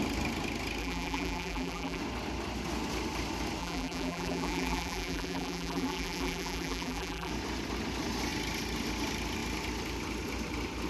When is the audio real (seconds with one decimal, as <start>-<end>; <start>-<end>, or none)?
0.0-0.8; 2.0-3.6; 7.3-10.9